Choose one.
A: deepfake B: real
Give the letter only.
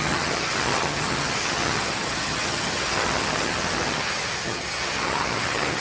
A